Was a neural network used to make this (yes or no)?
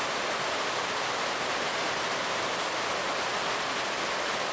no